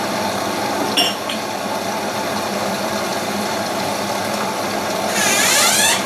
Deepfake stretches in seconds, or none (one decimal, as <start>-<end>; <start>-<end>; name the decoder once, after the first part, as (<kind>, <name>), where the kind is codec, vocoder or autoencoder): 3.1-4.2 (vocoder, BigVGAN v2); 5.2-6.1